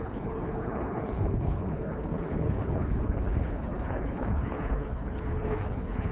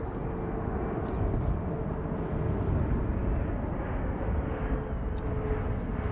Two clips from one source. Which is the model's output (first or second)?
first